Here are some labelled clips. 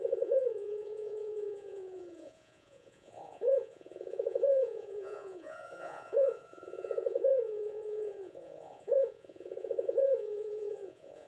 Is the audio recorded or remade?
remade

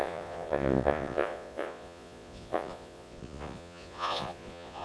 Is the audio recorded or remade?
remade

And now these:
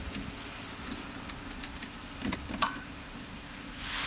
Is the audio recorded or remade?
recorded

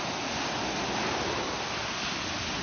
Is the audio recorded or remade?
recorded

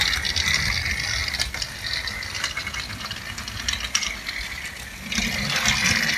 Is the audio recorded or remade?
recorded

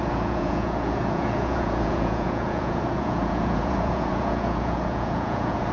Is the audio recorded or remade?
remade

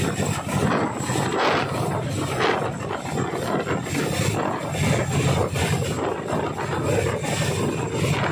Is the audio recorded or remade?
recorded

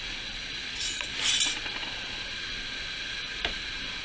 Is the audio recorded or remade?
recorded